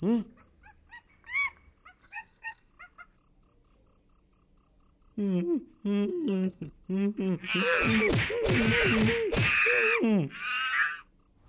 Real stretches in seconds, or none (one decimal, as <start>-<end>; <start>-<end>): 0.0-2.0; 2.7-6.1; 6.7-11.5